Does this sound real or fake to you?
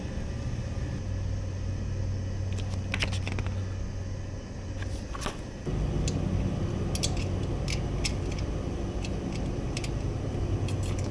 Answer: real